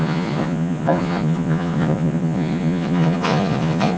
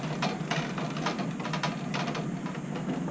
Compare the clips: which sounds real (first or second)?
second